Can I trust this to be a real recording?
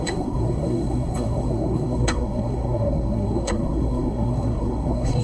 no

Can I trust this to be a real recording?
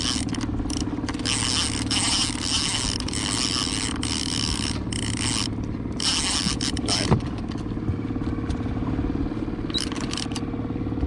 yes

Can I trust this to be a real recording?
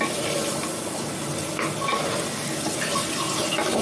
yes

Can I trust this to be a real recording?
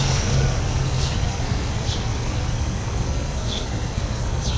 no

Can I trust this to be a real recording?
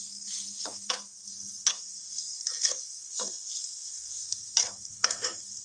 no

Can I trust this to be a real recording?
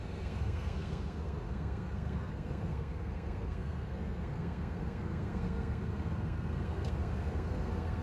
no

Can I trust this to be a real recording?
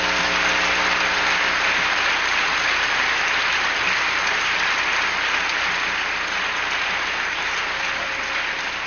yes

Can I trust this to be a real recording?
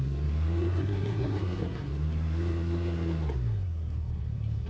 no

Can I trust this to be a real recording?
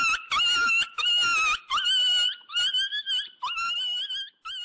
yes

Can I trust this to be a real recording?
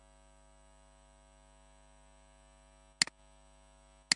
yes